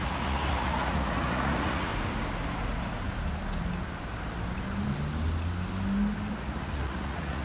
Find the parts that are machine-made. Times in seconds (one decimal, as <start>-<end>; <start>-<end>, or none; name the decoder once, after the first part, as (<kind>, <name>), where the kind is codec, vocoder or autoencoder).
0.0-1.9 (vocoder, Vocos); 6.3-7.4